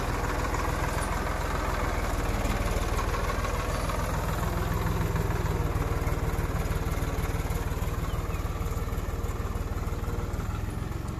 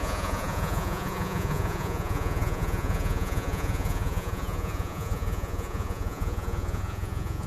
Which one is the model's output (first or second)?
second